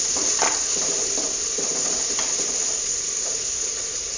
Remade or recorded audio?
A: remade